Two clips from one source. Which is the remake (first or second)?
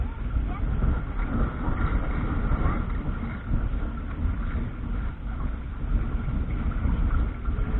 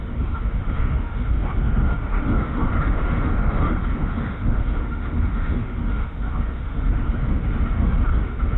second